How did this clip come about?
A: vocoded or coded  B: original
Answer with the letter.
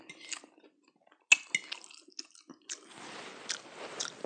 B